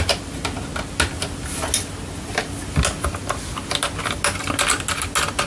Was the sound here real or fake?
real